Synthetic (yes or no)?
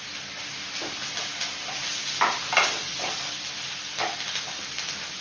no